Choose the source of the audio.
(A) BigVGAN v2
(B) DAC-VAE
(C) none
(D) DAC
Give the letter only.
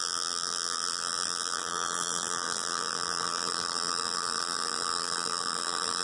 A